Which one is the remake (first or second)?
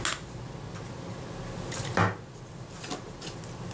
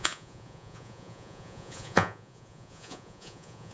second